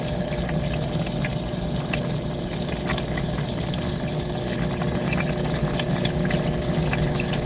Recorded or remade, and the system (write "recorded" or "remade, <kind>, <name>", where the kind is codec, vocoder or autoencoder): recorded